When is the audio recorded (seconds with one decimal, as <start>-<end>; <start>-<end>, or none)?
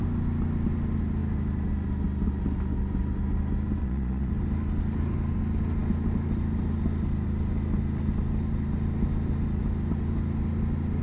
0.0-3.8; 4.3-11.0